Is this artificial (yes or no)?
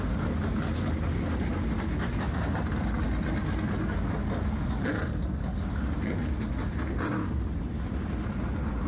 no